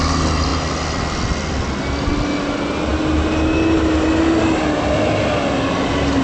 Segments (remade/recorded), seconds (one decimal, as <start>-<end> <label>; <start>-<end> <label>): 0.0-6.2 recorded